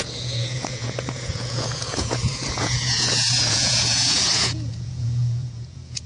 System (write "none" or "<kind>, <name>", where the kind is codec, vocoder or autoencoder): vocoder, Vocos